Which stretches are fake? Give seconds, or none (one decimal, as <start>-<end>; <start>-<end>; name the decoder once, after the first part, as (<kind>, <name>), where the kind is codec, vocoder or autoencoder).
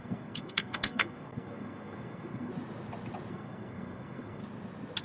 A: 0.0-2.5 (codec, SNAC); 3.3-4.4